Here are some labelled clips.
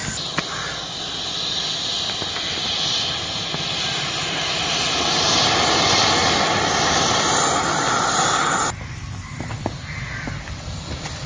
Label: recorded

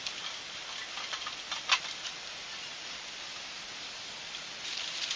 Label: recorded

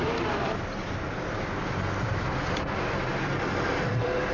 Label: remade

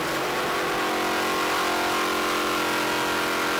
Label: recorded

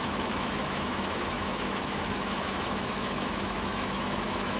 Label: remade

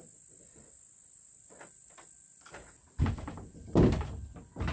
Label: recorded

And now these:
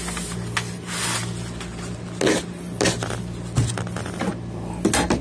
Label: recorded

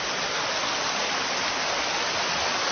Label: recorded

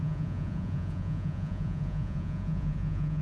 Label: remade